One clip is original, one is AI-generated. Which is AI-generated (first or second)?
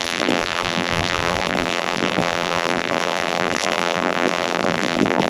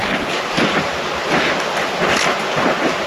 first